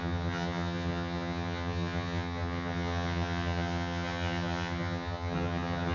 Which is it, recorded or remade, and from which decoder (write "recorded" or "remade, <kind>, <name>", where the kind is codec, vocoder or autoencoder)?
remade, vocoder, HiFi-GAN